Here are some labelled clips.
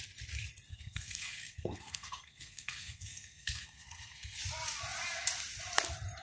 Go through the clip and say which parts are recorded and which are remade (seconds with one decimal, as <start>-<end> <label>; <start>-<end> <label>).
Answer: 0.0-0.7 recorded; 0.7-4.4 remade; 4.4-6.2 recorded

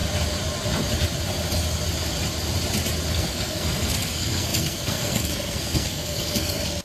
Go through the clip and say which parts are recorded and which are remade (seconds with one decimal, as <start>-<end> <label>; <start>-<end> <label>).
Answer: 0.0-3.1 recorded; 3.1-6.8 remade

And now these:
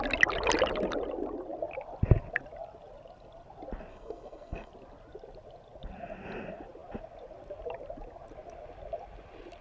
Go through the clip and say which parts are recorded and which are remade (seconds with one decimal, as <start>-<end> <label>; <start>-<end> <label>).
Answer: 0.0-3.9 recorded; 3.9-4.7 remade; 4.7-9.6 recorded

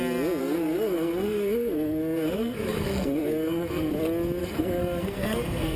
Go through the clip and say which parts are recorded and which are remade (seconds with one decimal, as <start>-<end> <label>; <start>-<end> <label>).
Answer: 0.0-0.4 recorded; 0.4-3.9 remade; 3.9-4.4 recorded; 4.4-5.8 remade